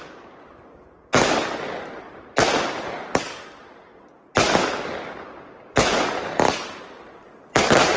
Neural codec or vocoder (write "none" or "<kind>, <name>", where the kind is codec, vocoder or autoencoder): none